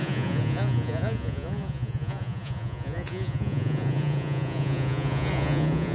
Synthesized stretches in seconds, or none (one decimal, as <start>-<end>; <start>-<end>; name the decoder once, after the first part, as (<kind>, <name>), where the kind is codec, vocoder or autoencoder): 0.0-5.9 (vocoder, Vocos)